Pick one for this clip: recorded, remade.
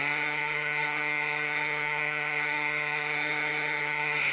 remade